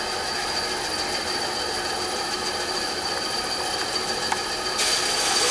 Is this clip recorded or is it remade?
recorded